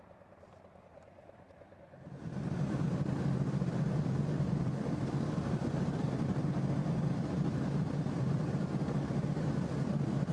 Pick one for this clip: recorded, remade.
remade